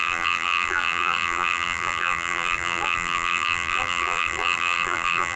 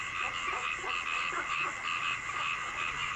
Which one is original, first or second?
second